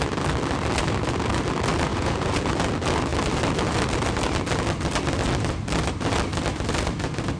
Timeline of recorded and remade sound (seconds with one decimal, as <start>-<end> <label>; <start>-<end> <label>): 0.0-1.9 recorded; 1.9-2.5 remade; 2.5-7.4 recorded